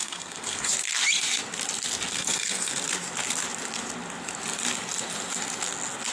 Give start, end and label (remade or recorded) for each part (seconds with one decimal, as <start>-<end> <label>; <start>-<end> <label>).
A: 0.0-0.7 remade; 0.7-2.1 recorded; 2.1-2.7 remade; 2.7-6.1 recorded